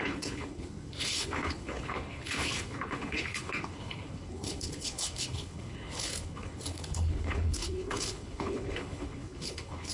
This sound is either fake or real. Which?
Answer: fake